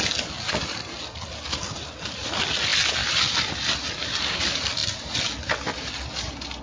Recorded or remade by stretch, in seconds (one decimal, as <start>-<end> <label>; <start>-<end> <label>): 0.0-6.6 recorded